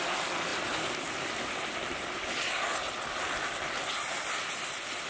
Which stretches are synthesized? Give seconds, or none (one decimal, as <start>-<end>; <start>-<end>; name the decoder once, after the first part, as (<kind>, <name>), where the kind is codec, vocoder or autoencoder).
none